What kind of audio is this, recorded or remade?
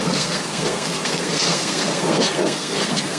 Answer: remade